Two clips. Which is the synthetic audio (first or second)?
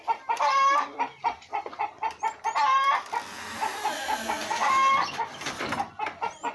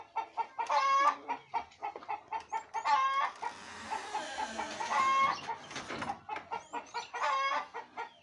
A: first